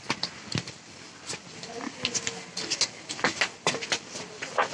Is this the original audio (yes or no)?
yes